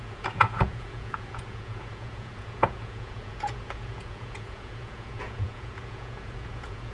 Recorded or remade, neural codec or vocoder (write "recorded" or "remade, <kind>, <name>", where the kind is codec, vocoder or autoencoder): remade, vocoder, Vocos